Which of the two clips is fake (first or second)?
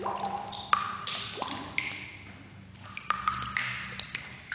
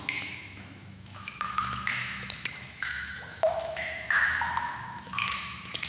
second